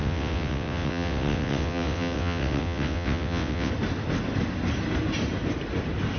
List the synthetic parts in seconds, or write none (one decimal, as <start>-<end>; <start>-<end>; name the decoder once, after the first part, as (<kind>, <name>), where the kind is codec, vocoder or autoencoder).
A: 0.0-3.7 (vocoder, WaveNeXt)